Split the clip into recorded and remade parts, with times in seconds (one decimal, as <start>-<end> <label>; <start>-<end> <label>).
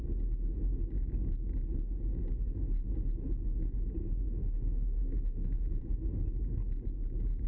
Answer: 0.0-4.4 recorded; 4.4-5.8 remade; 5.8-7.5 recorded